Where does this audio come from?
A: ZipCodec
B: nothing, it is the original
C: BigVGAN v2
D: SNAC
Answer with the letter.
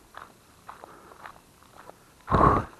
C